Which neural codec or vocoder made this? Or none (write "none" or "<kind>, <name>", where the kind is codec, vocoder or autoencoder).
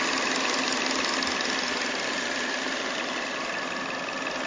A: none